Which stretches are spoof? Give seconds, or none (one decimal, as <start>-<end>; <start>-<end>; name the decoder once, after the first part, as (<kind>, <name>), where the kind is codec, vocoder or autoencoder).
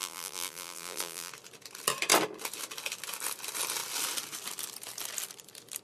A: 0.0-1.3 (vocoder, BigVGAN v2)